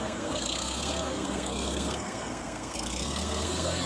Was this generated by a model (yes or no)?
yes